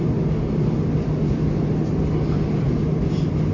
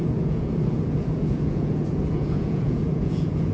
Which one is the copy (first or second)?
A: second